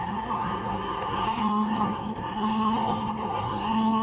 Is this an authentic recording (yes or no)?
no